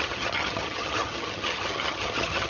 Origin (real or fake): fake